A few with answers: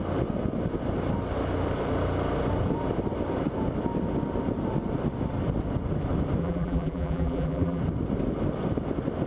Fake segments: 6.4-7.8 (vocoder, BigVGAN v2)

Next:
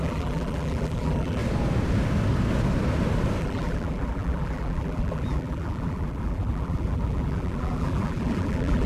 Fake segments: 0.0-1.4 (vocoder, BigVGAN v2); 3.4-8.9